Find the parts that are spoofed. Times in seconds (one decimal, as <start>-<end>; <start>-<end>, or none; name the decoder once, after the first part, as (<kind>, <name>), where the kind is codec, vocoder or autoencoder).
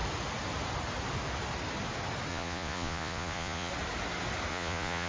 2.3-3.7 (vocoder, Vocos); 4.5-5.1